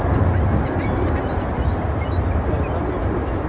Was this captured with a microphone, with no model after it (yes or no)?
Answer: yes